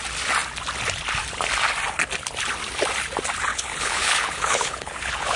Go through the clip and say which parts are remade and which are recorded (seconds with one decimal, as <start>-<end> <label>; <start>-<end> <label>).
0.0-3.5 recorded; 3.5-5.4 remade